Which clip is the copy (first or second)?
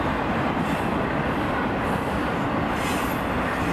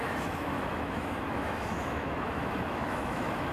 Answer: second